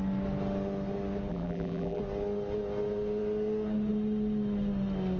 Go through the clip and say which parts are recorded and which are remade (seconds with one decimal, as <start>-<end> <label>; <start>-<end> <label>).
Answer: 0.0-1.3 recorded; 1.3-2.0 remade; 2.0-5.2 recorded